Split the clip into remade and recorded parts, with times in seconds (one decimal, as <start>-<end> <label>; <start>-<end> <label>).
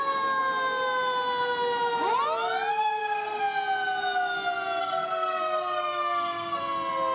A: 0.0-2.7 recorded; 2.7-3.4 remade; 3.4-4.8 recorded; 4.8-6.6 remade; 6.6-7.1 recorded